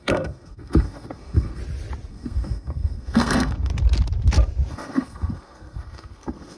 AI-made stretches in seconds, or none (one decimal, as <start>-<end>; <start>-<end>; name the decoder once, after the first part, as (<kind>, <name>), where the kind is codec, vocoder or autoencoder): 0.0-1.6 (codec, SNAC); 2.1-3.7; 4.7-6.6